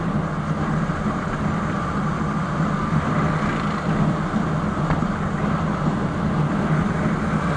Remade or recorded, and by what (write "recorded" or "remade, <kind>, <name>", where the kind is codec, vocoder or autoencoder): recorded